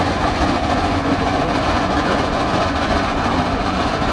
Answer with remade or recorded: remade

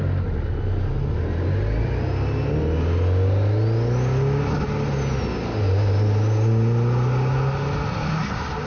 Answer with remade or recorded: recorded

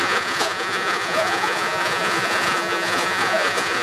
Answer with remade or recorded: remade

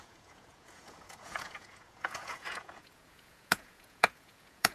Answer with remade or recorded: remade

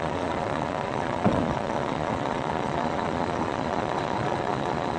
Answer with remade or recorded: remade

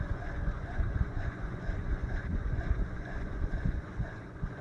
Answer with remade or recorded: remade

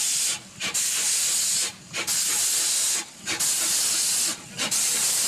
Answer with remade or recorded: recorded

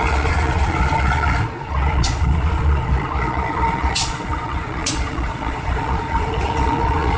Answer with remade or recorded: remade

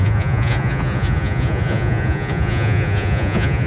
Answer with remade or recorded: remade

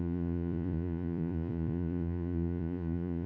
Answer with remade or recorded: remade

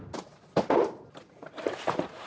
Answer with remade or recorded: recorded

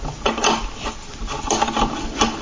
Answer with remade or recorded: recorded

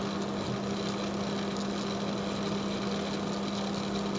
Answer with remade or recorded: recorded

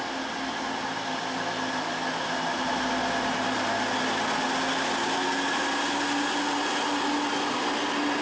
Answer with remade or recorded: recorded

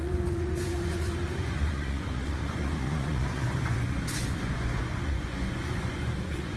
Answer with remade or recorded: remade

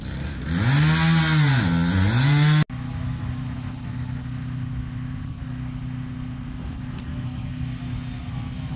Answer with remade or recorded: recorded